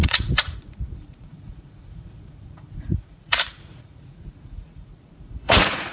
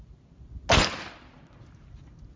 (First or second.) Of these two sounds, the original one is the second